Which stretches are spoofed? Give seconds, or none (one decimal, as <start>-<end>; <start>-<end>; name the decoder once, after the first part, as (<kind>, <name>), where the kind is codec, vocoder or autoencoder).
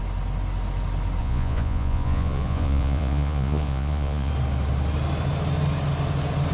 1.2-4.3 (vocoder, Vocos)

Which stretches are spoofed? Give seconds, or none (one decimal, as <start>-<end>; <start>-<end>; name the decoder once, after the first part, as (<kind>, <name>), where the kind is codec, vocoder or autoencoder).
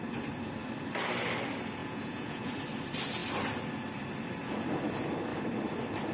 1.8-2.5 (vocoder, Vocos)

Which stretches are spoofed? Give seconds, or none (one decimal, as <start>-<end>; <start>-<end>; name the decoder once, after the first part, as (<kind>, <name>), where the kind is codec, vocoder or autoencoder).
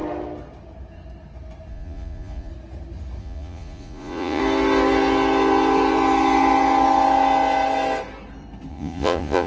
1.7-2.5 (vocoder, Vocos); 3.2-4.4; 8.7-9.5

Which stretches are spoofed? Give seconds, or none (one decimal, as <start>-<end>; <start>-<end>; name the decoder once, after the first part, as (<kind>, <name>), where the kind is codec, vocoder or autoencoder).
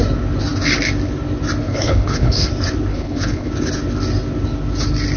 1.6-2.5 (codec, HILCodec); 2.9-3.5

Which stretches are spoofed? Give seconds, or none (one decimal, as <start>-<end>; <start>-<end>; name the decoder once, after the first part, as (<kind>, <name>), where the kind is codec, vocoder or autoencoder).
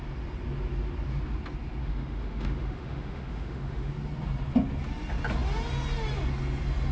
1.8-3.9 (autoencoder, DAC-VAE)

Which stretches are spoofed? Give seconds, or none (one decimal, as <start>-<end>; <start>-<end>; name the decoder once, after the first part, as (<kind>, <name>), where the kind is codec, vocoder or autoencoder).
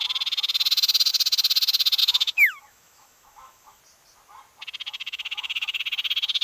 2.0-3.8 (autoencoder, DAC-VAE); 4.9-5.8